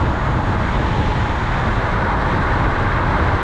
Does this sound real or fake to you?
real